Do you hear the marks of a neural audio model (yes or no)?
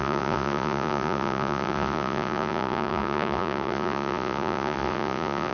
yes